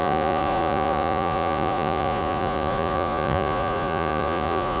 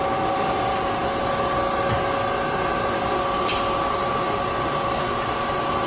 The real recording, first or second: second